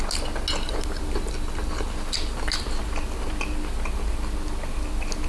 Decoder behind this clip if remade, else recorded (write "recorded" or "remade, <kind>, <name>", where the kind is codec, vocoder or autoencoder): recorded